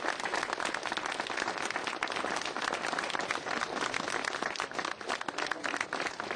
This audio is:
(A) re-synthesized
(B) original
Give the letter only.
B